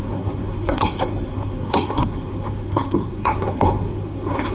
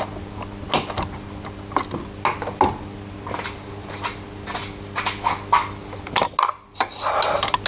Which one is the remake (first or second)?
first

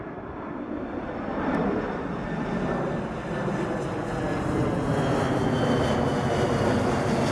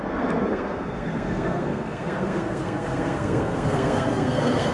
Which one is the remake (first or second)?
second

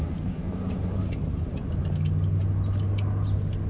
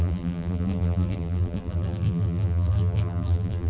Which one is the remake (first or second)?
second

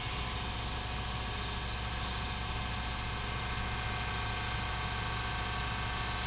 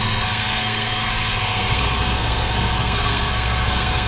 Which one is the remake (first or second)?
second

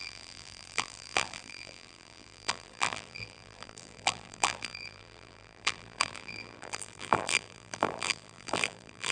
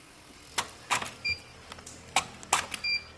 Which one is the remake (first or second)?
first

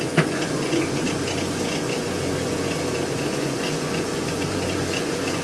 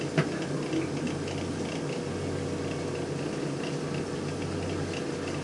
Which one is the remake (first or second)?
first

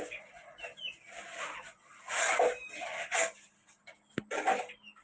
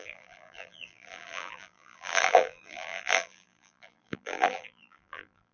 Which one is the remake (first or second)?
second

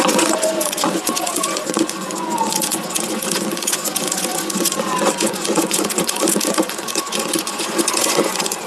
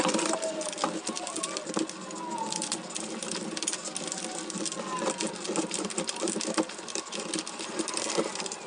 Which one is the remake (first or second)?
first